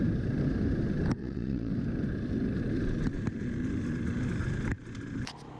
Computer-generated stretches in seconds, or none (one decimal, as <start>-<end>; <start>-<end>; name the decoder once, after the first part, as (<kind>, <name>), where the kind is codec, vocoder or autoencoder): 1.2-1.7 (vocoder, Vocos)

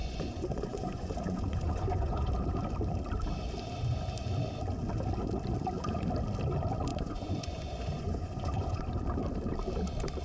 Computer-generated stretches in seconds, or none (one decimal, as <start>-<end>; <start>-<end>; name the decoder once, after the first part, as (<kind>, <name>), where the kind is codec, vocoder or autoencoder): 0.0-2.3 (vocoder, Vocos); 6.9-8.8

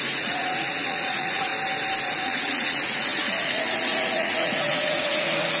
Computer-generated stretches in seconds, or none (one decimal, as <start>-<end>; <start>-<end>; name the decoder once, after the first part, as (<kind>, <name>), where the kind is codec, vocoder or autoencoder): 0.0-1.5 (vocoder, Vocos); 2.0-5.6

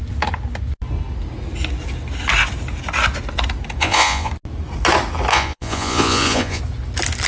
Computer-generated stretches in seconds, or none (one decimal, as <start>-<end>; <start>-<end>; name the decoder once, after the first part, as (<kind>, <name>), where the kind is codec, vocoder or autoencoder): 3.8-4.3 (vocoder, Vocos); 5.3-6.6

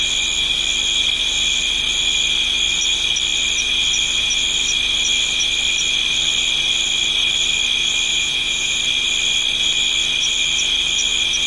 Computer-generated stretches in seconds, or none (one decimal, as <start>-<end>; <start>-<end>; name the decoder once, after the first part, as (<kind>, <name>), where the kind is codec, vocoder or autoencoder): 8.1-8.8 (vocoder, Vocos)

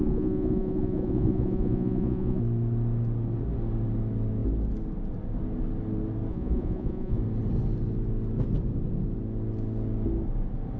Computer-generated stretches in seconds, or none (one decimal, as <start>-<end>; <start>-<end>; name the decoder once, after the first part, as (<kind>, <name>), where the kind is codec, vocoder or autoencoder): 0.0-2.4 (vocoder, Vocos); 6.3-7.2